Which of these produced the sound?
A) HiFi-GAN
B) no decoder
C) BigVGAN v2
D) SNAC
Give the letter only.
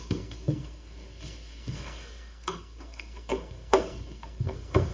D